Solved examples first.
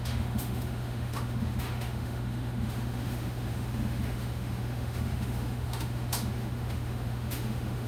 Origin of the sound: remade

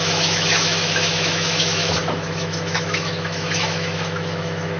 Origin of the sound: remade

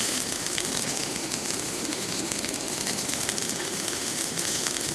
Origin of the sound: remade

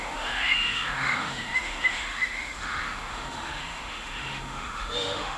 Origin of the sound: remade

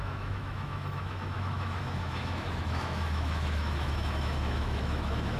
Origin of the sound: remade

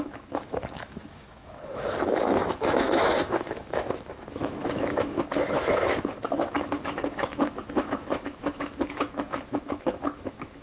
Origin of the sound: remade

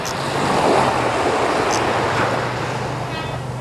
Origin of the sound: recorded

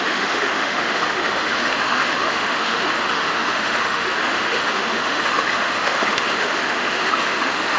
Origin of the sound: remade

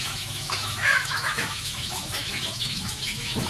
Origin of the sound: remade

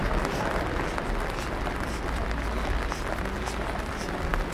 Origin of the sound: recorded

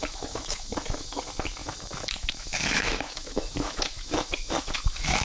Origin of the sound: remade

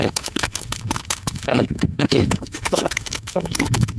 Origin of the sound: remade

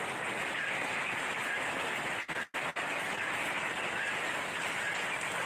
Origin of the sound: recorded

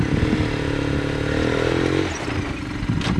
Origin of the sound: recorded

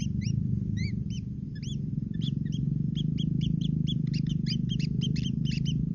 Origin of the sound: recorded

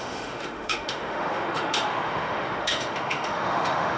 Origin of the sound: remade